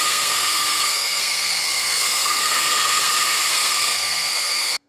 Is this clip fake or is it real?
fake